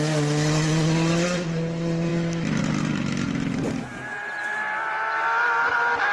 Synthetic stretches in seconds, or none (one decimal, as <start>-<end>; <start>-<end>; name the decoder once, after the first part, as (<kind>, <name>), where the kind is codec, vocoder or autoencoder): none